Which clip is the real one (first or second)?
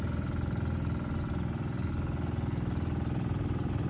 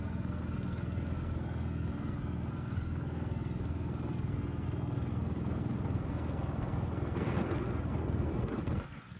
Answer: first